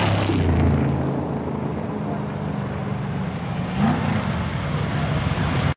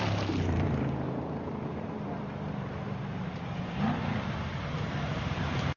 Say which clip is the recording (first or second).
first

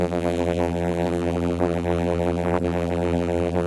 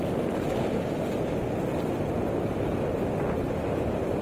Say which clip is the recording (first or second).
second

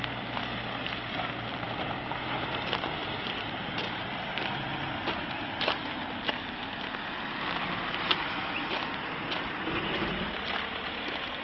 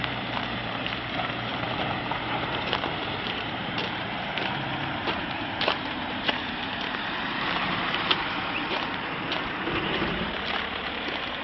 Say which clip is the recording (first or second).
first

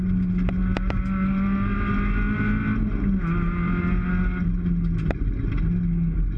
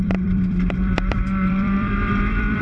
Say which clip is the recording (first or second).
first